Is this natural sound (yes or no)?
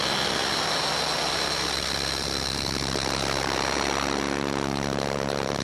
yes